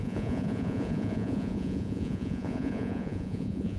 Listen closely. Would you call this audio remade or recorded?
remade